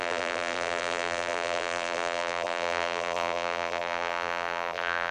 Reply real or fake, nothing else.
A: fake